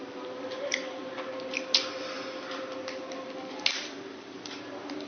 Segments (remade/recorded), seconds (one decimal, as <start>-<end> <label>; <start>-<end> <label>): 0.0-5.1 recorded